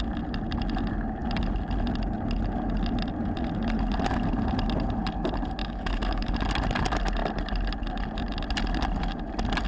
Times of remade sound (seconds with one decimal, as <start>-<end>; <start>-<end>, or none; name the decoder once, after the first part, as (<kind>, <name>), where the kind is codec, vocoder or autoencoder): 5.6-6.3 (autoencoder, DAC-VAE)